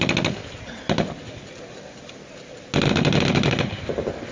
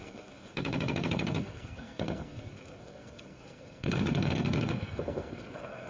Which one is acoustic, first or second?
first